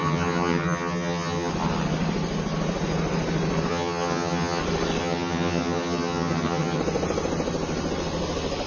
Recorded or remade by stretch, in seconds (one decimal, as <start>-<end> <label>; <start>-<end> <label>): 0.0-1.5 remade; 1.5-3.7 recorded; 3.7-4.6 remade; 4.6-5.0 recorded; 5.0-6.8 remade; 6.8-8.7 recorded